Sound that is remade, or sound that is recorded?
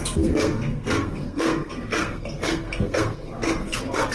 remade